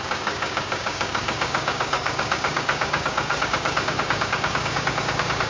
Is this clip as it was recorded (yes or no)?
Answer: no